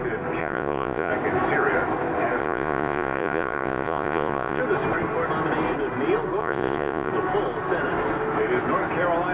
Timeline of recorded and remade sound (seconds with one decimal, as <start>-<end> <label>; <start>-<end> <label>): 0.0-0.4 recorded; 0.4-1.1 remade; 1.1-2.4 recorded; 2.4-4.6 remade; 4.6-6.4 recorded; 6.4-7.1 remade; 7.1-9.3 recorded